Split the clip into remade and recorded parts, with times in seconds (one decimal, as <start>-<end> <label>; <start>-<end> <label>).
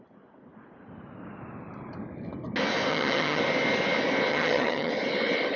0.0-2.9 recorded; 2.9-3.4 remade; 3.4-4.3 recorded; 4.3-4.9 remade; 4.9-5.6 recorded